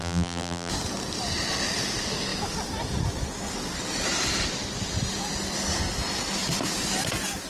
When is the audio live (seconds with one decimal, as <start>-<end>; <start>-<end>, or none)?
0.7-7.5